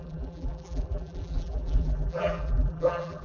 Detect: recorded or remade remade